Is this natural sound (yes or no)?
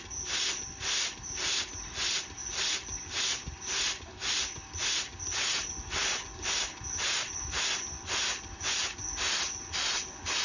yes